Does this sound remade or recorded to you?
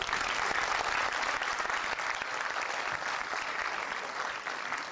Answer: recorded